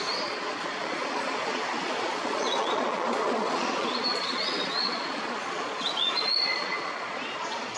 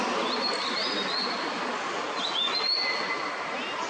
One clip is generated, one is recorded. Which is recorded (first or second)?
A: second